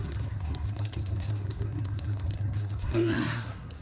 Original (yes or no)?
no